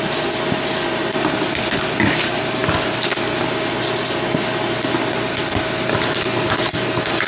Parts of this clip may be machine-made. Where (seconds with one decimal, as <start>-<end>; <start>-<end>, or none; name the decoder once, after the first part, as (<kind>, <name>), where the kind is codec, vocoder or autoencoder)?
none